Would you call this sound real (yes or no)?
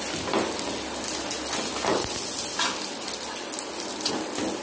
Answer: yes